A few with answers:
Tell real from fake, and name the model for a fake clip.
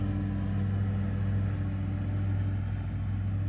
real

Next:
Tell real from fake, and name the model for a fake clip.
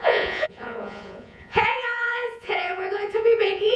fake, vocoder, Vocos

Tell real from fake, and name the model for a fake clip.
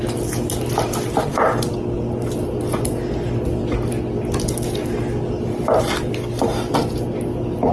real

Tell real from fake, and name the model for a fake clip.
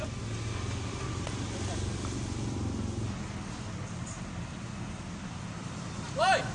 real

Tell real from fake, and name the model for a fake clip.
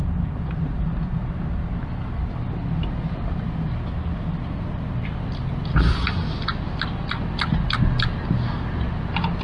real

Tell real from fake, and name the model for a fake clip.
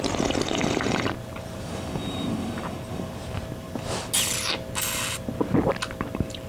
real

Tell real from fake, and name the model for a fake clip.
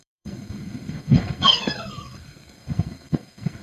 fake, codec, SNAC